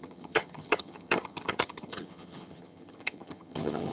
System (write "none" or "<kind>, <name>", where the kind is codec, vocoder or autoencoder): vocoder, HiFi-GAN